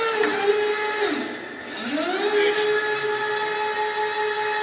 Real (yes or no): yes